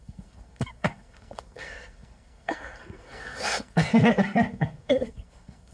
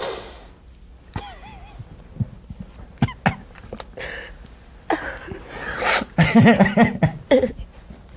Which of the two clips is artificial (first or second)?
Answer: first